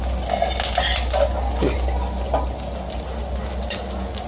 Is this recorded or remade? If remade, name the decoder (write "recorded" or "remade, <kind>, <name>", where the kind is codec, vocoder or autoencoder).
recorded